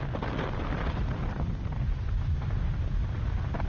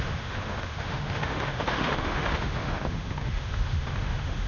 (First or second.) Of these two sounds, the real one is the first